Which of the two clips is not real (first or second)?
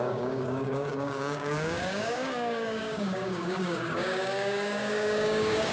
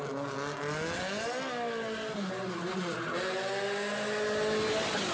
first